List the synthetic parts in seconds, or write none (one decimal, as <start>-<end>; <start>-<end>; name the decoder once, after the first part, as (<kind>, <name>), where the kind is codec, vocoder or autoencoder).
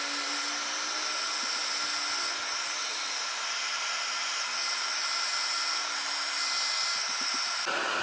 none